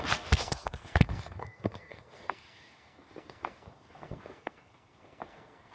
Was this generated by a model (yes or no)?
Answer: yes